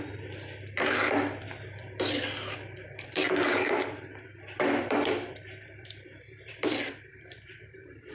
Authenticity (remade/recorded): remade